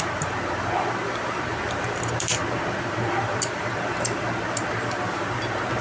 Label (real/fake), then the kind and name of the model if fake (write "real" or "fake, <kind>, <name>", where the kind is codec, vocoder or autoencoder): real